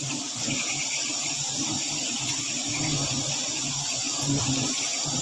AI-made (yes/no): no